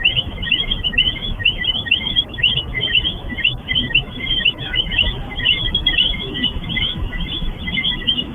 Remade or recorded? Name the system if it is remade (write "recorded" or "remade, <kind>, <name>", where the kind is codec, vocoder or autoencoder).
remade, autoencoder, DAC-VAE